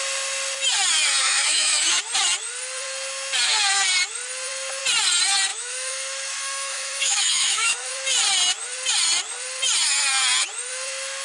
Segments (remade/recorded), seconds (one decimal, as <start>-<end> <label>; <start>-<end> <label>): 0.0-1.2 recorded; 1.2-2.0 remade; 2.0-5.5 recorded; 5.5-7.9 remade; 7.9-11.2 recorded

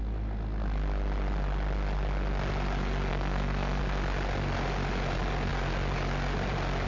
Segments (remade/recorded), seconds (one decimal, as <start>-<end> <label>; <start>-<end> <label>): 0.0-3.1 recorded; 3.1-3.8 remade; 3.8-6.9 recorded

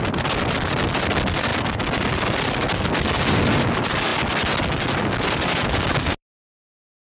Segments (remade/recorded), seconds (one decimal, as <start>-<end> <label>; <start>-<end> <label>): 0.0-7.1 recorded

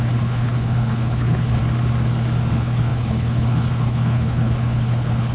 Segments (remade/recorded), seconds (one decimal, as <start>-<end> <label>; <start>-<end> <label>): 0.0-1.6 remade; 1.6-2.5 recorded; 2.5-5.3 remade